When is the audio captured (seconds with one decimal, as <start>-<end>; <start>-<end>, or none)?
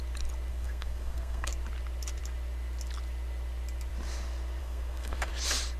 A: 0.0-0.5; 1.5-4.6; 5.3-5.8